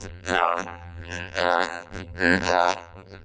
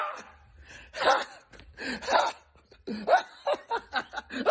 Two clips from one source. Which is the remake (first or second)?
first